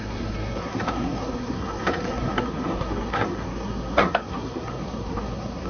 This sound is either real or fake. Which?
fake